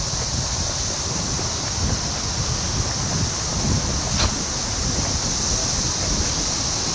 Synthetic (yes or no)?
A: no